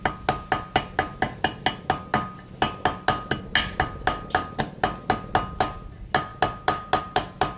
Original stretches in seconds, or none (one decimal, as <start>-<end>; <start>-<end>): 0.0-7.6